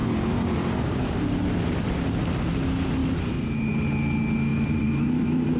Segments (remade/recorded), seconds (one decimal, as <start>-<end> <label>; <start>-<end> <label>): 0.0-1.1 remade; 1.1-4.5 recorded; 4.5-5.6 remade